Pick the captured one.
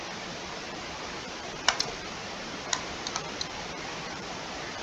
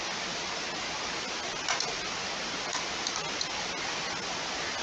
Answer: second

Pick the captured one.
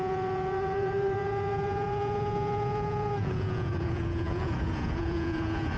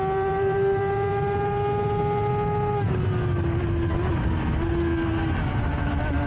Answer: second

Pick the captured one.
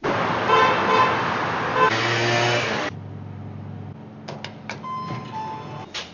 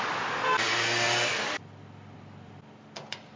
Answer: first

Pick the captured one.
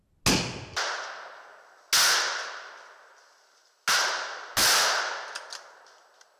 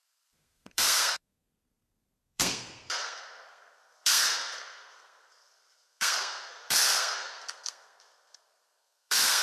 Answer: first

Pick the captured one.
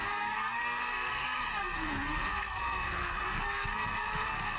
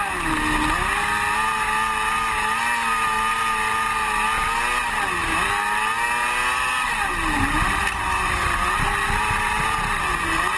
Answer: second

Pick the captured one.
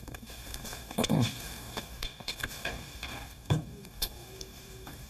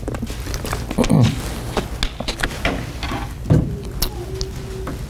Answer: second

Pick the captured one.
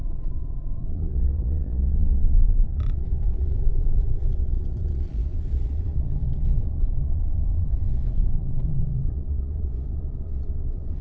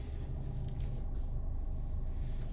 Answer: second